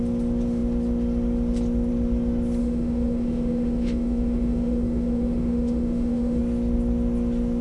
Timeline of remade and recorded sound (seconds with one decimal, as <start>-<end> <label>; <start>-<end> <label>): 0.0-2.6 recorded; 2.6-6.4 remade; 6.4-7.6 recorded